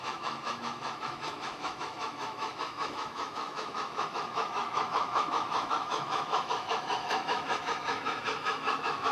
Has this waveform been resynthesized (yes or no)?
yes